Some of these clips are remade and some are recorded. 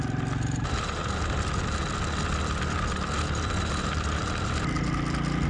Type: recorded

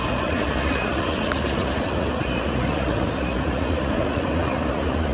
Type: remade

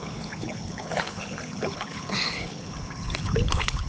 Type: remade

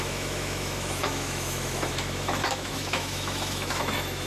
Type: remade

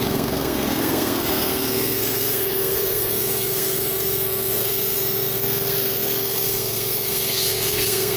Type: remade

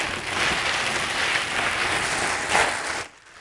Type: recorded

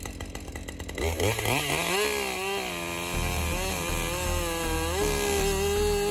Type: recorded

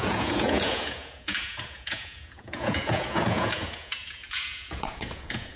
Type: remade